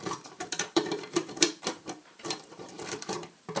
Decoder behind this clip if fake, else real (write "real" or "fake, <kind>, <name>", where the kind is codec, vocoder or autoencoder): fake, vocoder, BigVGAN v2